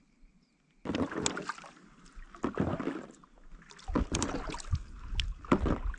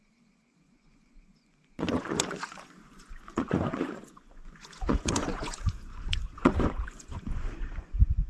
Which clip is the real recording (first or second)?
first